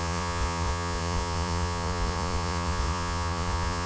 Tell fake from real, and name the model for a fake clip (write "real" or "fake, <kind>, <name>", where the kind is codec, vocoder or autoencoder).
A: fake, vocoder, Vocos